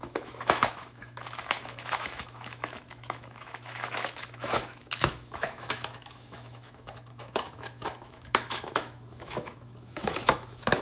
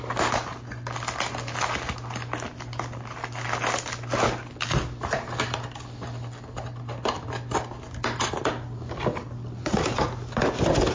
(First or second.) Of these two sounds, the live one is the second